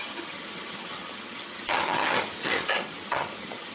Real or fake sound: fake